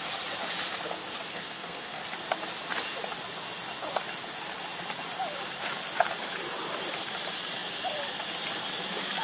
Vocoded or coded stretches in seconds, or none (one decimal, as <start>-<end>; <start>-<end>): 1.3-2.0